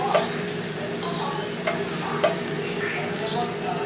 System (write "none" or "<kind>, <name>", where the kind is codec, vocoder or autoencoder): none